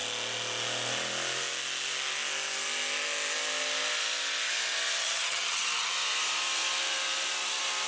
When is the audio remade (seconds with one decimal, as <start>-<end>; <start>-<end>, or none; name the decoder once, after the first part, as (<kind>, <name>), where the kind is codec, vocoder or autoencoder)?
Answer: 5.0-5.9 (vocoder, HiFi-GAN)